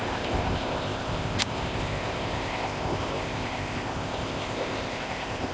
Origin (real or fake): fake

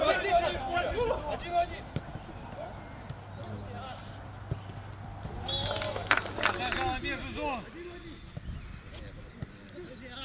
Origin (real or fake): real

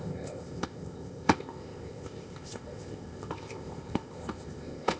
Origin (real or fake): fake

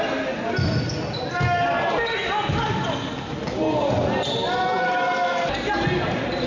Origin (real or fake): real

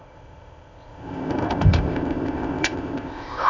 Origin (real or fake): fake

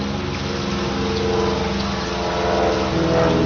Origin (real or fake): real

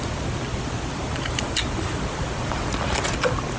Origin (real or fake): real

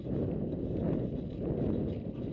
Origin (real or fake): real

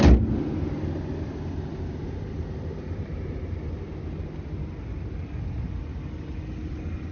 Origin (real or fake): real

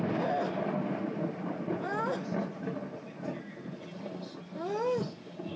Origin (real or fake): real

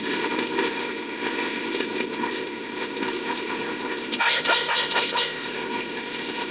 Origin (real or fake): fake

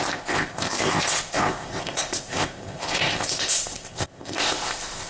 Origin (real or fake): fake